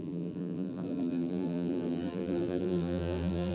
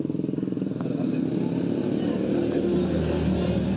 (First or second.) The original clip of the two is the second